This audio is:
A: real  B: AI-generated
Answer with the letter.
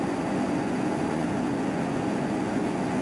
B